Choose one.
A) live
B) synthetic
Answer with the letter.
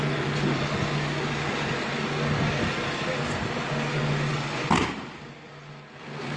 A